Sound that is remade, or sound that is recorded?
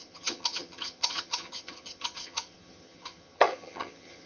remade